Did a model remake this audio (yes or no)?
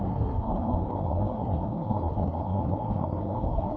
yes